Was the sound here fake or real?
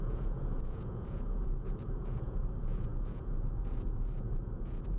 fake